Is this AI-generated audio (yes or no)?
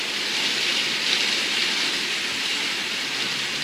no